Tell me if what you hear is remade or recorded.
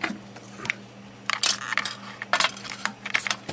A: recorded